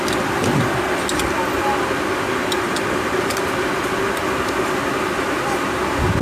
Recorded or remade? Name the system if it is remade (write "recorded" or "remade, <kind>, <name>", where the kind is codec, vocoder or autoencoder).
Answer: recorded